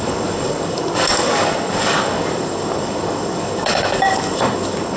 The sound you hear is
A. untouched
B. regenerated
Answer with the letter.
B